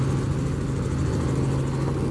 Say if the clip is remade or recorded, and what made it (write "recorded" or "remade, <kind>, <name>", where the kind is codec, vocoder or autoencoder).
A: recorded